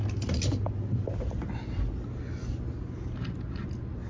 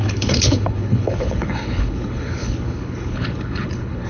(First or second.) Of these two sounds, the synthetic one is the second